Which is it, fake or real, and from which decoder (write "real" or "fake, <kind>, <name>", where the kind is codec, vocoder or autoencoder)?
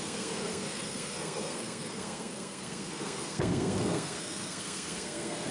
fake, codec, SNAC